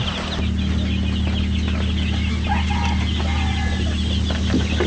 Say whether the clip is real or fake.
real